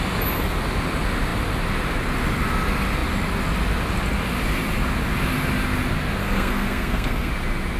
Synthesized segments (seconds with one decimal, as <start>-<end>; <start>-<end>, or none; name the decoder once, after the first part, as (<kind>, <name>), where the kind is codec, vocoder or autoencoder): 6.2-7.3 (codec, SNAC)